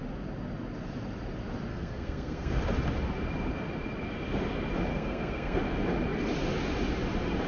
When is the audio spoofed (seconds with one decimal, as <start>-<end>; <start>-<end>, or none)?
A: 1.7-2.6; 4.9-5.6